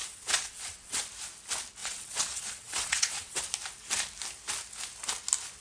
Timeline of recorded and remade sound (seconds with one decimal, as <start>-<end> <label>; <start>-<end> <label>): 0.0-1.0 remade; 1.0-1.8 recorded; 1.8-3.4 remade; 3.4-5.6 recorded